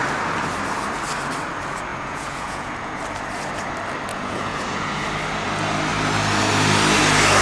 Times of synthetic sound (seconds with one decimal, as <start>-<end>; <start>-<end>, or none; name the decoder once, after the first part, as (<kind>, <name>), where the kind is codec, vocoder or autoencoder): 1.9-3.0 (vocoder, Vocos); 4.1-5.0